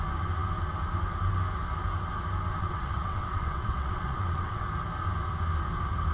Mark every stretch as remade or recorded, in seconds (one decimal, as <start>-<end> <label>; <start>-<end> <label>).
0.0-2.6 recorded; 2.6-4.6 remade; 4.6-6.1 recorded